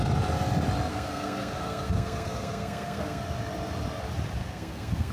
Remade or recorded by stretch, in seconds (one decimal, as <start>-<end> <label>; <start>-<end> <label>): 0.0-0.9 recorded; 0.9-3.2 remade; 3.2-4.4 recorded; 4.4-5.1 remade